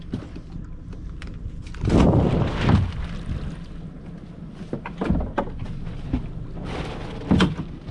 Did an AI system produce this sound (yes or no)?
no